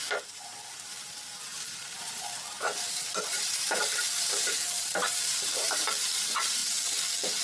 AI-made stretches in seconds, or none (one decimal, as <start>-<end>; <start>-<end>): 0.0-6.6